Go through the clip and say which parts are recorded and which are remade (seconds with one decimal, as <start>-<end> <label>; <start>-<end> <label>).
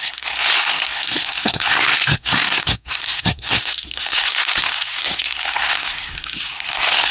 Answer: 0.0-7.1 remade